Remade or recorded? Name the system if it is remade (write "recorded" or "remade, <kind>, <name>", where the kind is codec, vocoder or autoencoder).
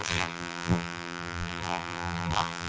remade, vocoder, BigVGAN v2